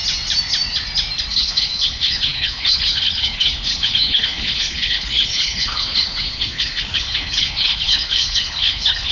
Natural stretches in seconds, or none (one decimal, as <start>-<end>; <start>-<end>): 0.0-1.3